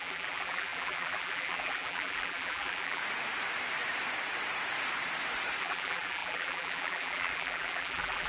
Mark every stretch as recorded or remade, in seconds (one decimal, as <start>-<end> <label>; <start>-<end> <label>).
0.0-3.0 remade; 3.0-5.6 recorded; 5.6-8.3 remade